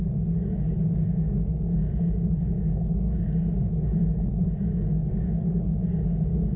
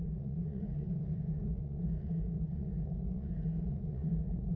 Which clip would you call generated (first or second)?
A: second